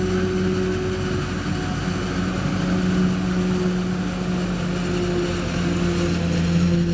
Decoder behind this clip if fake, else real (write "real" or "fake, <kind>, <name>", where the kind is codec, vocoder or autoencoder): real